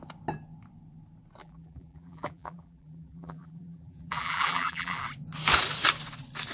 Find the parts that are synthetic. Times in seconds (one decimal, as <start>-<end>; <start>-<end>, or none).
1.4-5.0

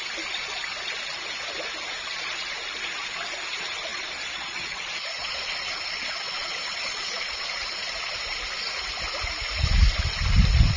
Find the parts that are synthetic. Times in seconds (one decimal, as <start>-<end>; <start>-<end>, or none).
3.9-7.4

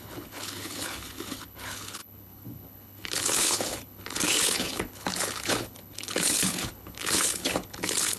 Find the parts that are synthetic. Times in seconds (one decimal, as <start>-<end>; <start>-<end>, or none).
0.0-8.2